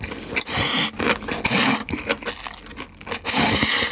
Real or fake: real